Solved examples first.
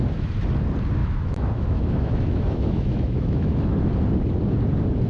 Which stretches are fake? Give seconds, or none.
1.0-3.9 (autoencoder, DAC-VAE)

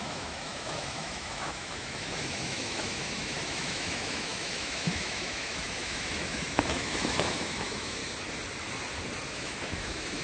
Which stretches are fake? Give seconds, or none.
0.0-8.0 (autoencoder, DAC-VAE); 9.3-10.2

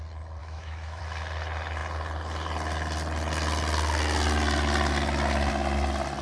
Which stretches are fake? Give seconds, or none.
0.4-1.0 (autoencoder, DAC-VAE)